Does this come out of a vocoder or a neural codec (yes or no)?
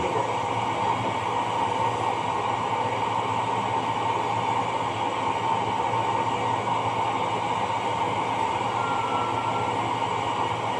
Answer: no